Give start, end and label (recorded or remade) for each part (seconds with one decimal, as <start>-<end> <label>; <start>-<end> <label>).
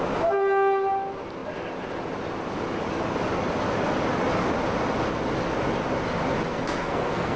0.0-6.5 recorded; 6.5-7.4 remade